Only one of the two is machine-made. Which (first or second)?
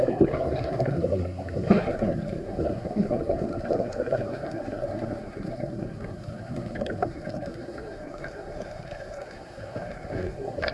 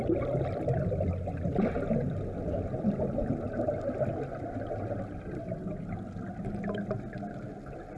first